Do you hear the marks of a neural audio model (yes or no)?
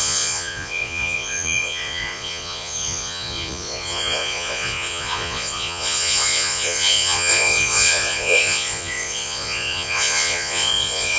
yes